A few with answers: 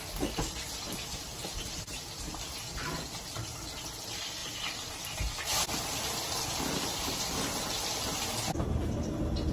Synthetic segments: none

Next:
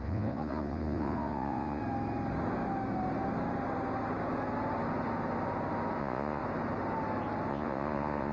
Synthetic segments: 0.0-1.8; 6.0-6.4; 7.5-8.3

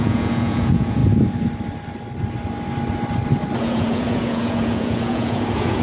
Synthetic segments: 0.0-1.0; 3.6-5.8

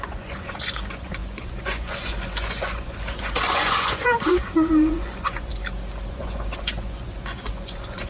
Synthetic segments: 0.0-5.5; 6.1-8.1

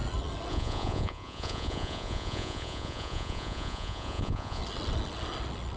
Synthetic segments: 0.5-4.6